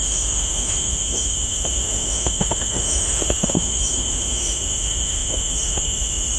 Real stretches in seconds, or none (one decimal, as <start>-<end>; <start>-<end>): none